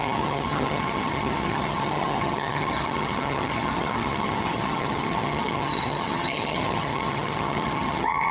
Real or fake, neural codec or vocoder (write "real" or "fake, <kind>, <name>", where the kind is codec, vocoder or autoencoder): fake, vocoder, HiFi-GAN